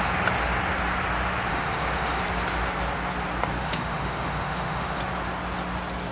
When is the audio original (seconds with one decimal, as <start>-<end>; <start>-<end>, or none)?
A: 0.0-1.5; 2.2-3.6; 5.0-6.1